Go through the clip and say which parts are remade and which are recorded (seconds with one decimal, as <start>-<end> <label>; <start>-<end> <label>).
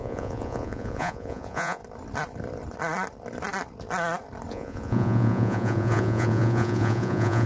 0.0-1.8 remade; 1.8-4.5 recorded; 4.5-7.5 remade